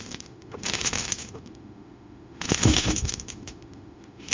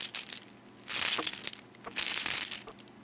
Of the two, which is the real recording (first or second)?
second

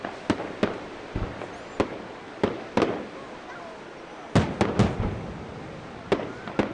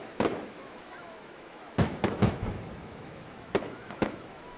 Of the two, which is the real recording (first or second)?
first